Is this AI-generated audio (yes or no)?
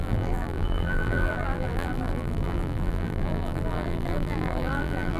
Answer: yes